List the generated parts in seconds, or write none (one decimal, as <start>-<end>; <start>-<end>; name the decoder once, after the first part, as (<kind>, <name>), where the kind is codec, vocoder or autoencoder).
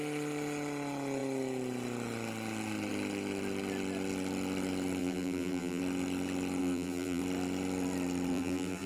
5.0-5.8 (vocoder, BigVGAN v2); 6.6-7.2; 8.3-8.9